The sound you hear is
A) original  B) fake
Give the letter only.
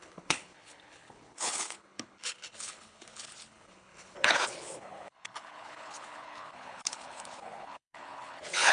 B